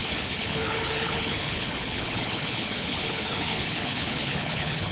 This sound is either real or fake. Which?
fake